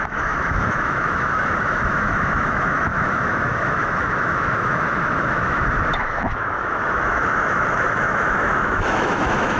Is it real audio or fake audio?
fake